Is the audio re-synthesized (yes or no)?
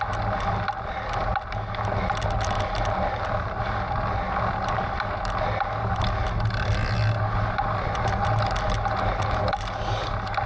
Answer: no